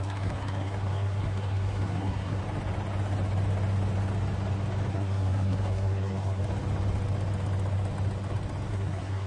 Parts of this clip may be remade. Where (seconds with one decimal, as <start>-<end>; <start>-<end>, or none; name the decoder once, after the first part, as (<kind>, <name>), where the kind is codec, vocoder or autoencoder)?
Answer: 0.0-2.4 (codec, SNAC); 4.9-6.4; 8.7-9.3